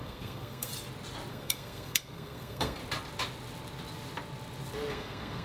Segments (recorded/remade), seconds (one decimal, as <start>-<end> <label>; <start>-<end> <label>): 0.0-0.7 remade; 0.7-1.3 recorded; 1.3-2.8 remade; 2.8-4.9 recorded; 4.9-5.4 remade

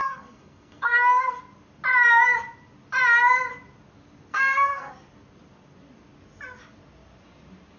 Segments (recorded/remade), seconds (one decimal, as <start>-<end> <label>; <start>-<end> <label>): 0.0-1.4 remade; 1.4-4.3 recorded; 4.3-4.9 remade; 4.9-7.8 recorded

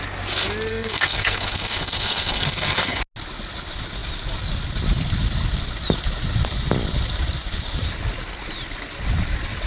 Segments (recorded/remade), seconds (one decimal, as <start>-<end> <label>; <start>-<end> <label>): 0.0-0.7 recorded; 0.7-3.0 remade; 3.0-9.7 recorded

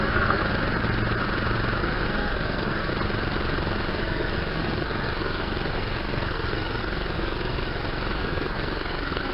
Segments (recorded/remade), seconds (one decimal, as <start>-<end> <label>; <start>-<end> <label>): 0.0-0.4 remade; 0.4-1.8 recorded; 1.8-2.9 remade; 2.9-3.9 recorded; 3.9-9.3 remade

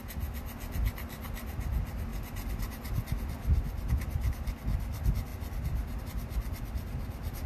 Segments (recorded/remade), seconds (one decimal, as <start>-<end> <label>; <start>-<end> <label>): 0.0-7.5 recorded

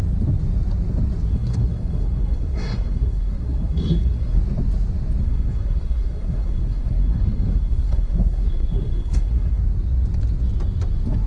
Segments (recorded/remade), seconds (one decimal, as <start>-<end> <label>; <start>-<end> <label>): 0.0-1.3 recorded; 1.3-4.4 remade; 4.4-5.2 recorded; 5.2-9.6 remade; 9.6-11.3 recorded

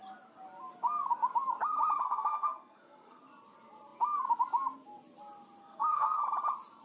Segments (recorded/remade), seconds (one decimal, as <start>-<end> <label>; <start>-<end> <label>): 0.0-2.0 recorded; 2.0-3.2 remade; 3.2-5.6 recorded; 5.6-6.2 remade; 6.2-6.8 recorded

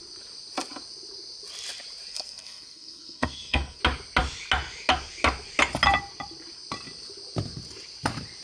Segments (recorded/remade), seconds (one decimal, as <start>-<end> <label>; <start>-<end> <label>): 0.0-2.1 recorded; 2.1-3.8 remade; 3.8-8.4 recorded